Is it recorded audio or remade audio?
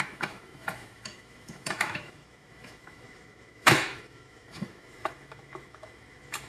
remade